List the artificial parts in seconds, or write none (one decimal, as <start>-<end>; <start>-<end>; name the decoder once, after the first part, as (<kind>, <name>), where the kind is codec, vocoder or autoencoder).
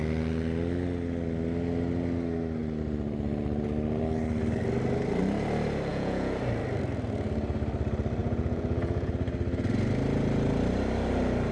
5.9-6.4 (vocoder, Vocos); 8.2-9.1